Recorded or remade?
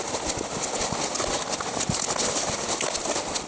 recorded